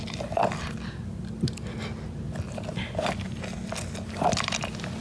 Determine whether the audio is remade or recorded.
recorded